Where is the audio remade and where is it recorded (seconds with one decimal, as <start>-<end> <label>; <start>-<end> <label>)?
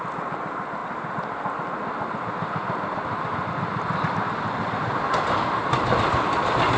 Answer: 0.0-6.8 recorded